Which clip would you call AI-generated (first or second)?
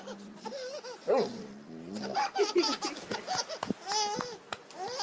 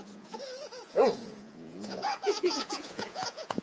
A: second